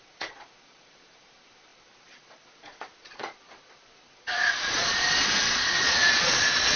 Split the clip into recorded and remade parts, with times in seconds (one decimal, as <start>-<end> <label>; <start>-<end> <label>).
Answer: 0.0-6.8 remade